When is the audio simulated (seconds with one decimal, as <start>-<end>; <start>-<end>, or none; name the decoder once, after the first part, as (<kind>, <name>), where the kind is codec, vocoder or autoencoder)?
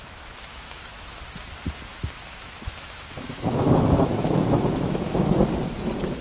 0.0-1.1 (autoencoder, DAC-VAE); 1.9-5.4